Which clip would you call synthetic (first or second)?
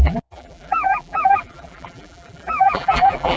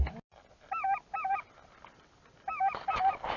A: first